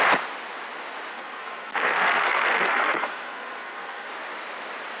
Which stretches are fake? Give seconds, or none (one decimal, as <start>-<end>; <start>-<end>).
1.1-4.1

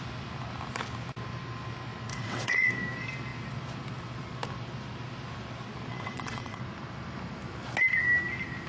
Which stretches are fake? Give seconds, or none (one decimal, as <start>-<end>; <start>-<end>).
2.1-2.7; 5.9-6.6

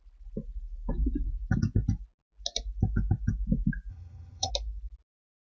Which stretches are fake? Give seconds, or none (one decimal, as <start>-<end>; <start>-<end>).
3.9-4.5

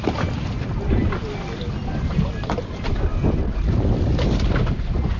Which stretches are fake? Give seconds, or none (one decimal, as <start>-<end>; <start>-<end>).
none